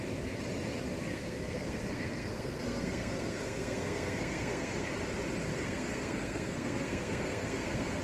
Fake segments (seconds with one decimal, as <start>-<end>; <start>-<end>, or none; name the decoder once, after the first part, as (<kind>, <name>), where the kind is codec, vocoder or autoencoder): 1.0-4.9 (codec, SNAC); 5.5-8.0